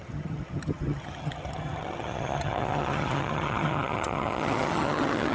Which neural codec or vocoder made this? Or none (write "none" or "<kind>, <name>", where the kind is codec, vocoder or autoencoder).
vocoder, HiFi-GAN